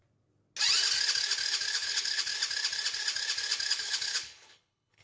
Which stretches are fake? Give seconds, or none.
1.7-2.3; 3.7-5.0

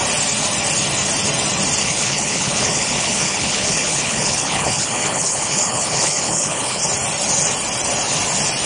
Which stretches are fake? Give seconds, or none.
1.8-6.8

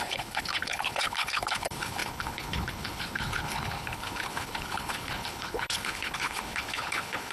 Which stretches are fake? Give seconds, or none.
0.0-7.3

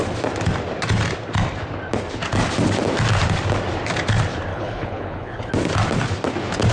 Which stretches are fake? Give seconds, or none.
4.5-5.5